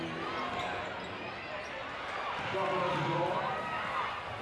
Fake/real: real